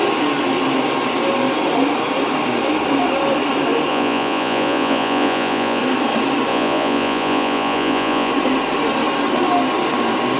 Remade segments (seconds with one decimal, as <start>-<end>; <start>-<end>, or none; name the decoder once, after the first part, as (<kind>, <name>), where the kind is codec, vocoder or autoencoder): 3.9-5.8 (vocoder, Vocos); 6.5-8.3